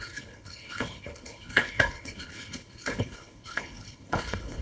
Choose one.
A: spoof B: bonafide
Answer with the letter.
A